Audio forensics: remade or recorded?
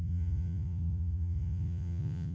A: remade